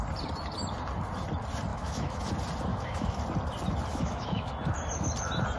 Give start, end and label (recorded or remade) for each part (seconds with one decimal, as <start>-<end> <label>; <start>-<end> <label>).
0.0-1.7 recorded; 1.7-2.2 remade; 2.2-2.7 recorded; 2.7-3.2 remade; 3.2-3.9 recorded; 3.9-4.5 remade; 4.5-5.6 recorded